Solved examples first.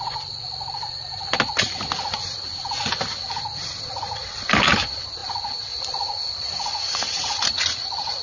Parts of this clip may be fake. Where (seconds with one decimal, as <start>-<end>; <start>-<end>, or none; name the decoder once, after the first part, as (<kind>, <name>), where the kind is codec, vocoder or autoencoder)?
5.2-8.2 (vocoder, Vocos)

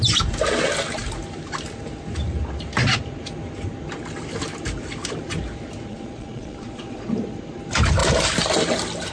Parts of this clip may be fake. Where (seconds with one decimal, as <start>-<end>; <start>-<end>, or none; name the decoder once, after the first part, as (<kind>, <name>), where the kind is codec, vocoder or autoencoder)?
5.9-7.0 (vocoder, Vocos)

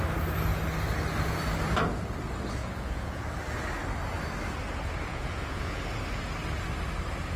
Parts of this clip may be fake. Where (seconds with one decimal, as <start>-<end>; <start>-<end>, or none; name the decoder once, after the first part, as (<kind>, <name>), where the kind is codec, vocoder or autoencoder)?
2.6-3.2 (vocoder, Vocos); 5.1-5.8

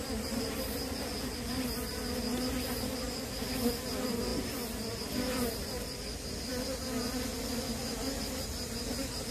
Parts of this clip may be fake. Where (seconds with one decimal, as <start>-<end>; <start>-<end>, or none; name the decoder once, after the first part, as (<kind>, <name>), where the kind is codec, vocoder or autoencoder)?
none